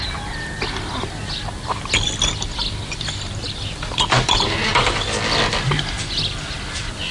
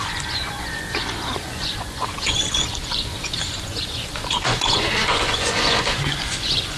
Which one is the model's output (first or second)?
second